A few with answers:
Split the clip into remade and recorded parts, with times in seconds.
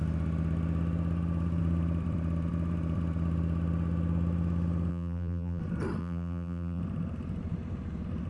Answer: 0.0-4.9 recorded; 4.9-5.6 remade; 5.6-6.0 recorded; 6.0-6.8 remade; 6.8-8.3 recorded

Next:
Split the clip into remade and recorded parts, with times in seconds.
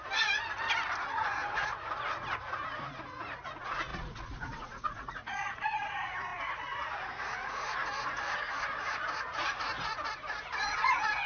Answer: 0.0-1.0 recorded; 1.0-11.3 remade